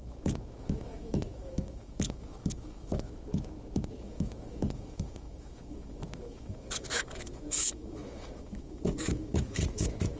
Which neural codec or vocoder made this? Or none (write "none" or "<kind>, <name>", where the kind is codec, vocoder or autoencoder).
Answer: autoencoder, DAC-VAE